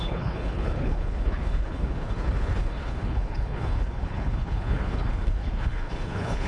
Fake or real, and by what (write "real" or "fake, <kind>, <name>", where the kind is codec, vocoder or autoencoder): fake, codec, HILCodec